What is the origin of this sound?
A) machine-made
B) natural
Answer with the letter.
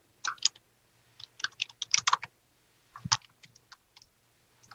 B